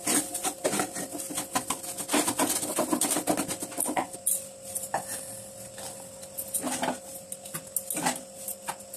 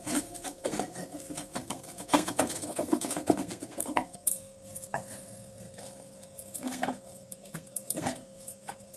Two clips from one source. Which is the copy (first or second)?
second